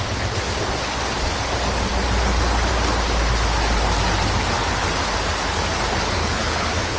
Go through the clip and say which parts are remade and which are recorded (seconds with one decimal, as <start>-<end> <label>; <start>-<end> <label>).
0.0-6.2 recorded; 6.2-7.0 remade